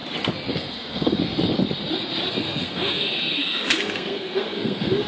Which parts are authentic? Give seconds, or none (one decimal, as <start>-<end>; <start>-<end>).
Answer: 0.0-0.5; 1.2-2.3